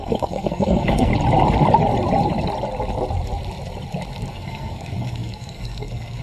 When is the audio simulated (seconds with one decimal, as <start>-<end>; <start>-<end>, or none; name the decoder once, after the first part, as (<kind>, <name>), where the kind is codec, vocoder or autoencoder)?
0.0-1.1 (codec, SNAC); 4.3-6.2